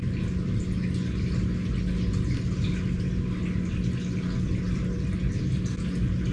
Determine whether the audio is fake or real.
real